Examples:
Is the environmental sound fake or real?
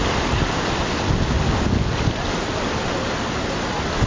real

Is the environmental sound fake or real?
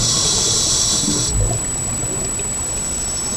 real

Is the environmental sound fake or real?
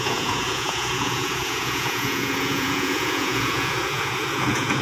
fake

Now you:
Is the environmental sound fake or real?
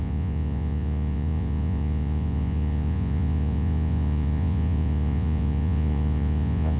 fake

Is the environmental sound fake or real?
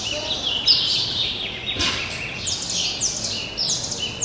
real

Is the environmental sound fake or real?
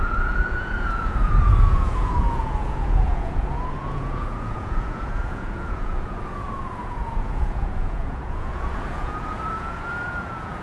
fake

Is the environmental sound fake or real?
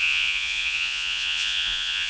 fake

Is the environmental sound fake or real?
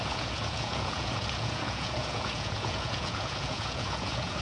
fake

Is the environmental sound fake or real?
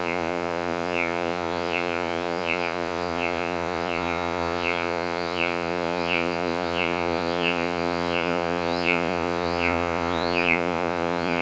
fake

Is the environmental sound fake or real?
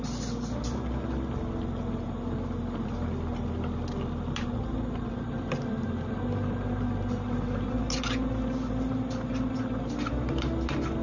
real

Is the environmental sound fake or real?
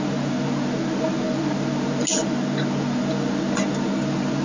real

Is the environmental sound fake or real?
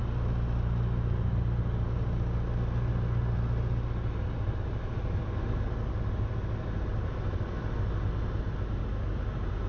real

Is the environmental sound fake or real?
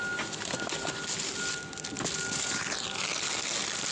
real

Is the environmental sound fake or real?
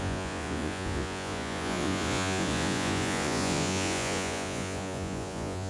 fake